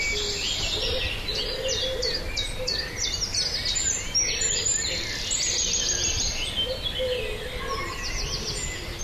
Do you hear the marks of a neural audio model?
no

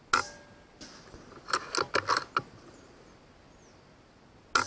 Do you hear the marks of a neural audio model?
no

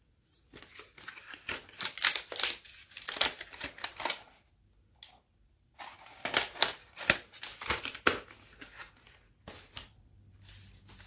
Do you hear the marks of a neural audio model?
no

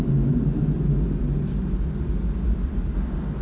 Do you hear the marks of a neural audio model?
no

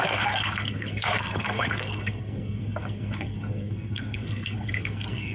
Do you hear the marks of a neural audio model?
yes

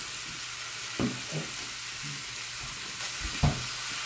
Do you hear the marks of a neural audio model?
no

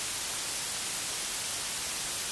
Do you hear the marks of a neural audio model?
no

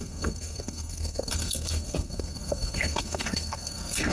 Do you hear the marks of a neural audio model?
yes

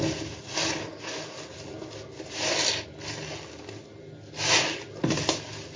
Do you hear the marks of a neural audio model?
no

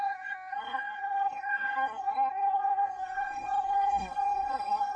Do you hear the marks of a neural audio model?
yes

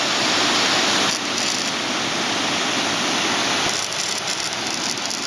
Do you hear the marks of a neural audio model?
no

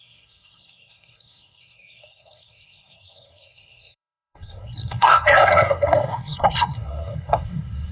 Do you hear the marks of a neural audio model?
yes